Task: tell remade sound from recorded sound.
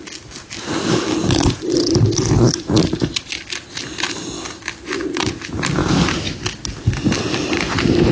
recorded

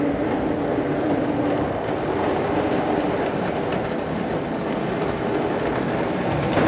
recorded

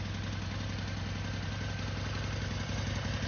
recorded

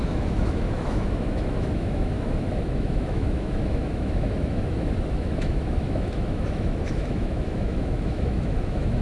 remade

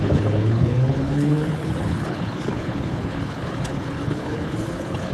remade